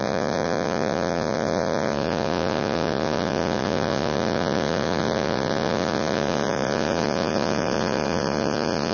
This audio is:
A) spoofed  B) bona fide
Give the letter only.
A